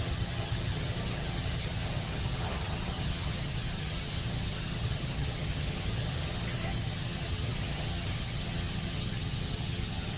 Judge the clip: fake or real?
fake